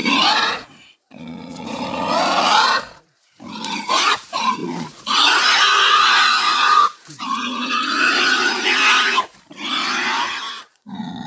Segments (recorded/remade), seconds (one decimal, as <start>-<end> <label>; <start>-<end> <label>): 0.0-8.8 remade; 8.8-10.5 recorded; 10.5-11.3 remade